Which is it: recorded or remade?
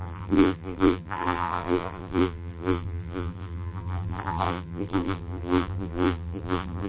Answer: remade